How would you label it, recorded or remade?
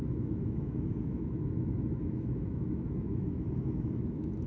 remade